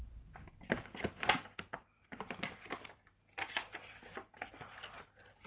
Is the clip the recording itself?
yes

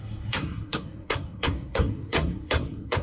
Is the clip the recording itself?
no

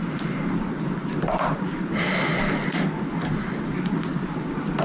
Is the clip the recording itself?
yes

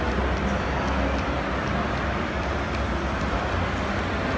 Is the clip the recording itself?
yes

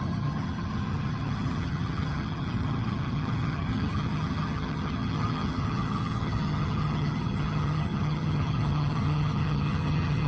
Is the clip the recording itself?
no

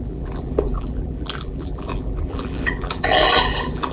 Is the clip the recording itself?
no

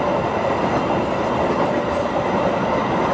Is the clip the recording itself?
yes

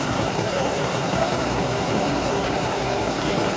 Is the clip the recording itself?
no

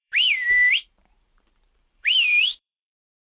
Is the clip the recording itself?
no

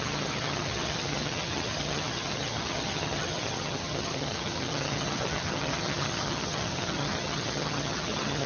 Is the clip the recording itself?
no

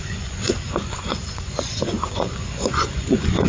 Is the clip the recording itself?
no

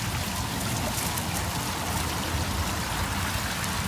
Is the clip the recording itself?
yes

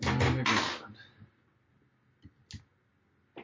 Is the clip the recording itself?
yes